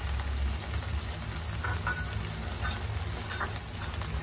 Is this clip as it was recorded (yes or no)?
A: yes